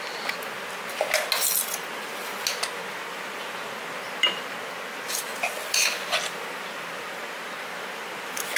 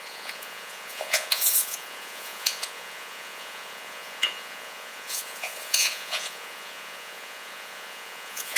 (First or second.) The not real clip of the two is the second